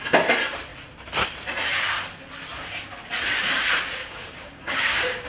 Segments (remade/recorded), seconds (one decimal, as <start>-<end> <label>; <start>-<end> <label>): 0.0-4.0 recorded; 4.0-5.3 remade